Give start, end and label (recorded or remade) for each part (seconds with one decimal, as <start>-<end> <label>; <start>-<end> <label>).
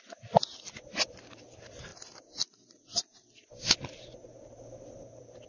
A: 0.0-5.5 recorded